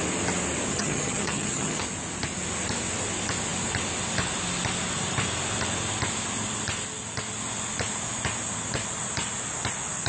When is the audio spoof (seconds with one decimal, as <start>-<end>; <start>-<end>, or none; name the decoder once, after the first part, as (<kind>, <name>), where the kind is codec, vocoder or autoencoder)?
0.7-1.8 (vocoder, HiFi-GAN)